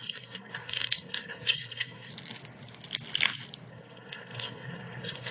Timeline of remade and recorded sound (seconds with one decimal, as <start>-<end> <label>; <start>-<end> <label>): 0.0-2.1 remade; 2.1-3.7 recorded; 3.7-5.3 remade

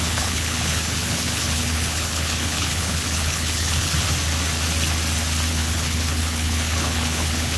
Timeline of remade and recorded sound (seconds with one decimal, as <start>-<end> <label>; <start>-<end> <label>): 0.0-4.1 remade; 4.1-5.5 recorded; 5.5-7.6 remade

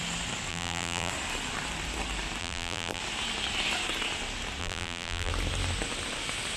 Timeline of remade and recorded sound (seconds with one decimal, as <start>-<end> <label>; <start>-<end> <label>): 0.0-0.5 recorded; 0.5-1.1 remade; 1.1-2.4 recorded; 2.4-3.0 remade; 3.0-4.6 recorded; 4.6-5.3 remade; 5.3-6.6 recorded

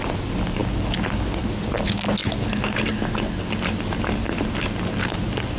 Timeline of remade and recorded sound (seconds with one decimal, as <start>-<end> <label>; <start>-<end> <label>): 0.0-5.6 recorded

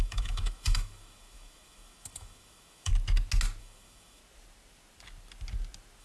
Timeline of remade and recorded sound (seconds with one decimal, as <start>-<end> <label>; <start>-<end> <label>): 0.0-2.9 remade; 2.9-3.6 recorded; 3.6-4.2 remade; 4.2-6.0 recorded

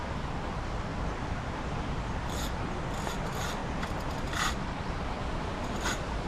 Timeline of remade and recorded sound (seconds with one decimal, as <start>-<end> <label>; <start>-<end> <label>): 0.0-6.3 recorded

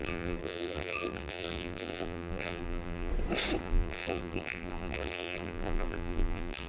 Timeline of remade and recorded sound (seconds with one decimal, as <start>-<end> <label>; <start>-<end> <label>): 0.0-3.1 remade; 3.1-3.6 recorded; 3.6-6.7 remade

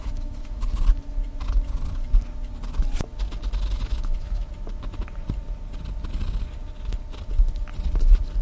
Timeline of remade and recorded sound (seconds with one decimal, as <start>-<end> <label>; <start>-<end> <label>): 0.0-0.6 remade; 0.6-3.8 recorded; 3.8-4.5 remade; 4.5-8.4 recorded